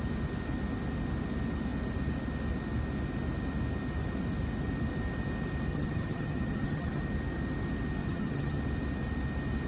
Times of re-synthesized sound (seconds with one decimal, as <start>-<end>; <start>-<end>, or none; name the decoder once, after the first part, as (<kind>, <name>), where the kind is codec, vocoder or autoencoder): 5.7-7.0 (vocoder, HiFi-GAN); 8.0-8.6